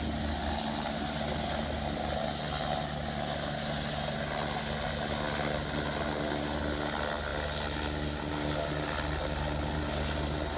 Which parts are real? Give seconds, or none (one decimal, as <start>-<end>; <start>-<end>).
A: 0.0-10.6